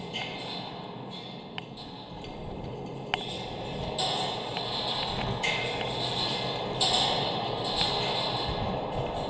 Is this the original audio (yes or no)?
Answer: yes